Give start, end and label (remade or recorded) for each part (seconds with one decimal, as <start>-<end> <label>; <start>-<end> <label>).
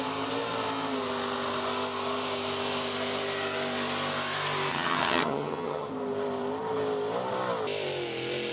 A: 0.0-4.7 recorded; 4.7-5.9 remade; 5.9-8.5 recorded